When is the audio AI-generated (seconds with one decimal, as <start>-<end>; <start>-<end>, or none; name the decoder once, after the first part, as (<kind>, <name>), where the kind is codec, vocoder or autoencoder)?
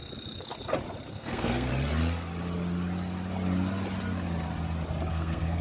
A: 1.1-1.7 (codec, SNAC); 5.1-5.6